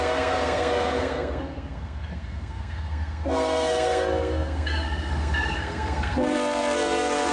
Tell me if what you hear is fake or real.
fake